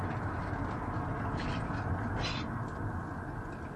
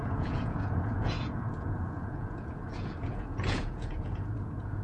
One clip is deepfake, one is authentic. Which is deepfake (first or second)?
second